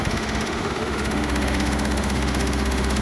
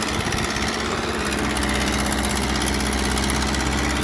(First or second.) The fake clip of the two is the first